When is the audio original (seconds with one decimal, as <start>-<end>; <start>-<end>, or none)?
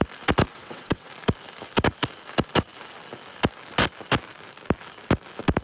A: 0.0-0.5; 1.1-5.6